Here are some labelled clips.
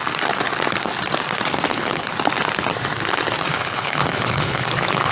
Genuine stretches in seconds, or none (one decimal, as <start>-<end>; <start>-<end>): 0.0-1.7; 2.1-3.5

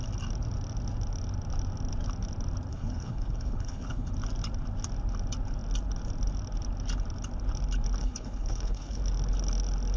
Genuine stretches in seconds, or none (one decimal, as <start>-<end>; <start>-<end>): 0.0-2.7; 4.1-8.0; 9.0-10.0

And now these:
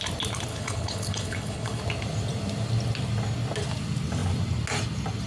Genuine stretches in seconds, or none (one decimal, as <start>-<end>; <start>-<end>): 0.0-0.5; 1.8-5.3

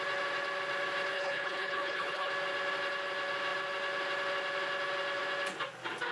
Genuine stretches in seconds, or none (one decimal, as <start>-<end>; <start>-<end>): 0.0-1.1; 2.3-6.1

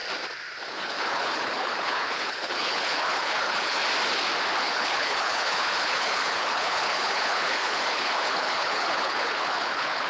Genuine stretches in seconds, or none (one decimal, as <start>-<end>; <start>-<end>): 0.0-0.7; 3.8-4.6

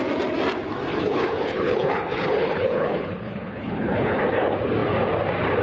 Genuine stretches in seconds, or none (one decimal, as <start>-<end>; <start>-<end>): 0.0-0.9; 4.2-5.6